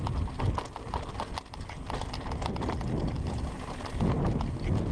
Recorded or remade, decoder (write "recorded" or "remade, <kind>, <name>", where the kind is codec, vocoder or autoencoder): recorded